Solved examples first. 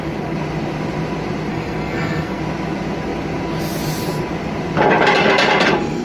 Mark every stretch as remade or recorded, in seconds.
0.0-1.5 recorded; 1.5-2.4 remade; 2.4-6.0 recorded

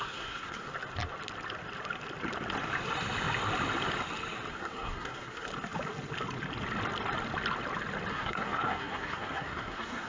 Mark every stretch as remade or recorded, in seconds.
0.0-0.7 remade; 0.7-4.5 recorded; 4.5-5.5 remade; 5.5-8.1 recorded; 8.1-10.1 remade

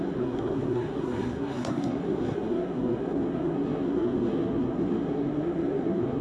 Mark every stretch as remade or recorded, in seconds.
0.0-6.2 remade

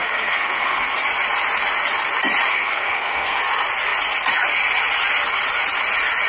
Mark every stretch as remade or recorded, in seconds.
0.0-1.0 remade; 1.0-2.5 recorded; 2.5-3.4 remade; 3.4-6.3 recorded

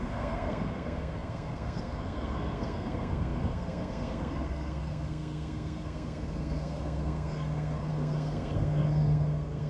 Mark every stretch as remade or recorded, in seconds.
0.0-9.7 remade

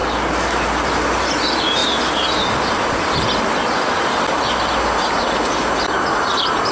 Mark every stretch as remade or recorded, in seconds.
0.0-6.7 recorded

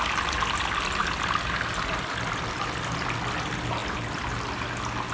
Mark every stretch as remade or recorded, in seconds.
0.0-5.1 recorded

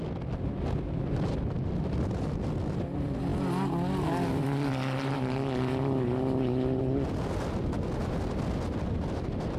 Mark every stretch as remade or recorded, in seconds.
0.0-9.6 recorded